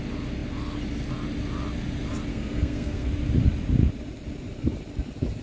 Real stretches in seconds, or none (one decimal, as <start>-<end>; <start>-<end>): 0.0-2.3; 3.1-5.4